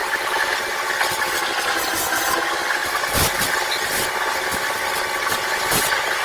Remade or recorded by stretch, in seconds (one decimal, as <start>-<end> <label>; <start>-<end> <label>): 0.0-6.2 recorded